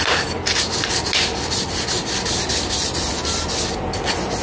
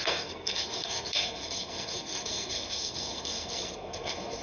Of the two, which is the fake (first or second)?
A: second